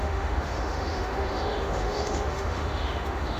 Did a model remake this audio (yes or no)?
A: yes